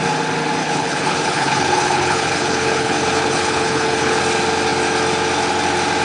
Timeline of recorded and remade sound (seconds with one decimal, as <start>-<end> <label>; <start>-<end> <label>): 0.0-0.6 recorded; 0.6-4.2 remade; 4.2-6.0 recorded